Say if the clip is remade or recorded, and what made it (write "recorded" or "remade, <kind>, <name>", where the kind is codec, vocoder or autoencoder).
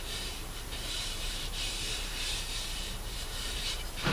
remade, vocoder, BigVGAN v2